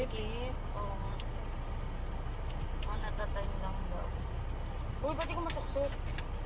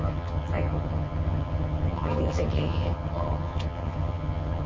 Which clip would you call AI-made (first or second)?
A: second